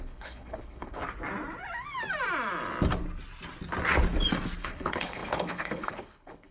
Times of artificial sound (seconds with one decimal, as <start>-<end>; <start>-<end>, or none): 0.0-1.0; 4.6-6.5